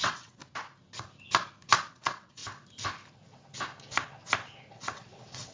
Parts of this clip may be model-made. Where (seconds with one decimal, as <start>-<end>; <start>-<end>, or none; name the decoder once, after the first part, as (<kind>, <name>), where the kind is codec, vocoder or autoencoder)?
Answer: 0.0-0.4 (vocoder, WaveNeXt); 1.9-2.4; 4.7-5.5